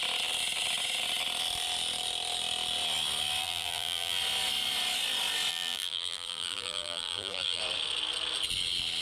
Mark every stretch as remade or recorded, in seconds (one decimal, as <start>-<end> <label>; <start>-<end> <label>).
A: 0.0-3.4 recorded; 3.4-4.2 remade; 4.2-5.5 recorded; 5.5-7.6 remade; 7.6-9.0 recorded